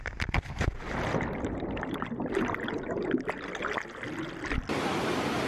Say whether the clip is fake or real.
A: real